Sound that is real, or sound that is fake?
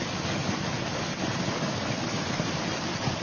real